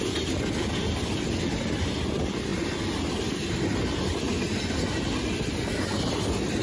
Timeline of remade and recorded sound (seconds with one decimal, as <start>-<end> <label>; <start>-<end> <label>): 0.0-6.6 recorded